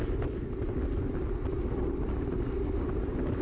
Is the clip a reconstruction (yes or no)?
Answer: no